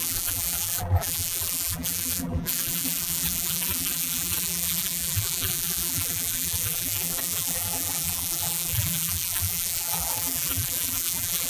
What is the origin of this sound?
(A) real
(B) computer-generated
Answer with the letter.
B